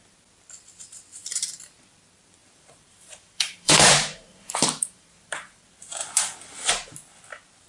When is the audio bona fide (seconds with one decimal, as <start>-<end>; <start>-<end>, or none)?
0.0-2.4; 5.6-7.7